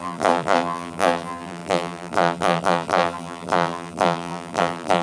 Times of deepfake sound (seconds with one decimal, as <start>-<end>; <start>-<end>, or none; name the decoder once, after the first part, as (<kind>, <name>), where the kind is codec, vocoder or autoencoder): 0.0-5.0 (vocoder, BigVGAN v2)